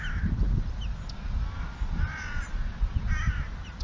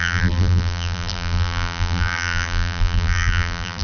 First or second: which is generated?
second